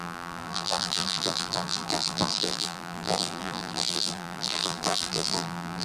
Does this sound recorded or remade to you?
remade